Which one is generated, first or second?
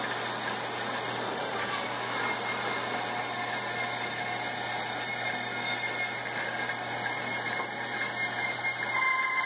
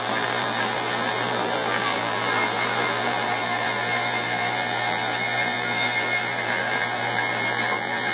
second